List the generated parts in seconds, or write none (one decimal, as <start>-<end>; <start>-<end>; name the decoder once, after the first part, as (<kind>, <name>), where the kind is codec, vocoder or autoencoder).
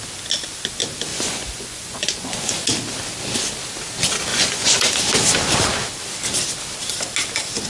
1.1-2.6 (vocoder, Vocos); 4.3-5.0